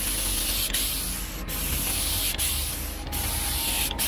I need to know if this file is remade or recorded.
recorded